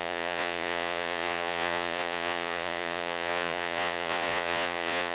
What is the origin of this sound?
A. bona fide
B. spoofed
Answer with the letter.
B